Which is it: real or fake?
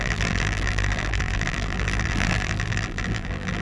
fake